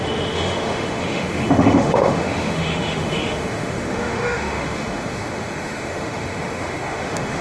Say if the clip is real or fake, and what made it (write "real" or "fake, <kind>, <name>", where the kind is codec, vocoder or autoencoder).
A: fake, autoencoder, DAC-VAE